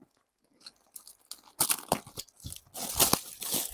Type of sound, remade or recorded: recorded